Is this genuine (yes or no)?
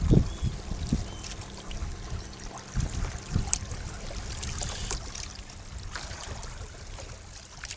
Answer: yes